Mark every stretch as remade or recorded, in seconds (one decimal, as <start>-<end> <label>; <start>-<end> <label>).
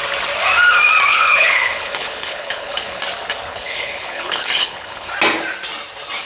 0.0-1.1 recorded; 1.1-3.0 remade; 3.0-3.5 recorded; 3.5-5.1 remade; 5.1-6.3 recorded